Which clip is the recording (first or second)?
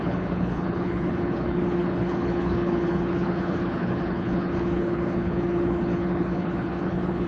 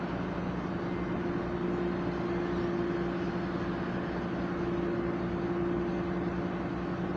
second